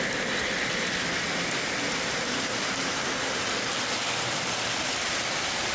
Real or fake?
real